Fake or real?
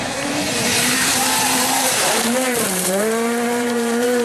fake